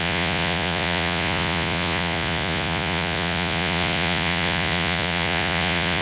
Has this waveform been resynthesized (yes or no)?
yes